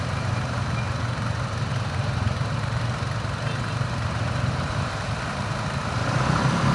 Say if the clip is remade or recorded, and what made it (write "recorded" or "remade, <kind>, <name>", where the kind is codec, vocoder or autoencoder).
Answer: remade, vocoder, BigVGAN v2